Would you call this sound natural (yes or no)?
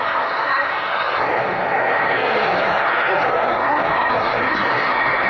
no